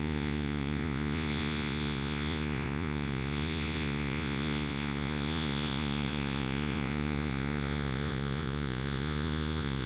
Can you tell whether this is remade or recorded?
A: remade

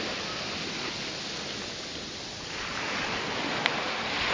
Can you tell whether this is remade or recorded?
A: recorded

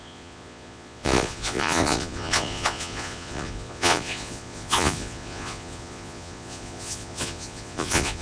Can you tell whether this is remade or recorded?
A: remade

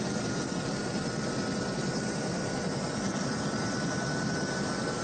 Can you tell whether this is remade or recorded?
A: recorded